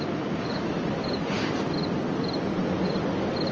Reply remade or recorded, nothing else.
recorded